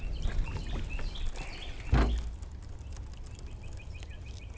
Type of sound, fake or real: real